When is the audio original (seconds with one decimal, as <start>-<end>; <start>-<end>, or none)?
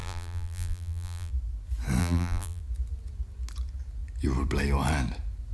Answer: 1.3-2.0; 2.6-5.5